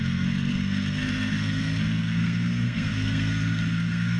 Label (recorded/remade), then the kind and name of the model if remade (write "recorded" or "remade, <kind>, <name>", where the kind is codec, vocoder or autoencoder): remade, codec, SNAC